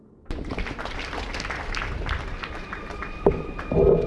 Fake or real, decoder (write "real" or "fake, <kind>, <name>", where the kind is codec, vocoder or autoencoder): real